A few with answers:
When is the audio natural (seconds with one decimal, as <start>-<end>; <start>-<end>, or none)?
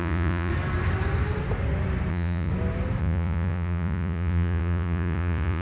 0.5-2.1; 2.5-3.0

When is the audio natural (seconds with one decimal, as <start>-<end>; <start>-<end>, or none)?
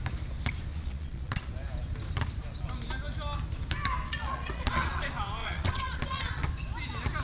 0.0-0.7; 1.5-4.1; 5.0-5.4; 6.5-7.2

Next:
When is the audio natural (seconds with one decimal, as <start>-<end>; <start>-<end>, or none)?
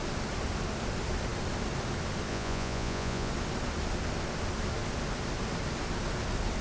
0.0-2.3; 3.3-6.6